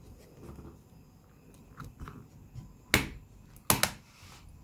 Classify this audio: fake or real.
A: real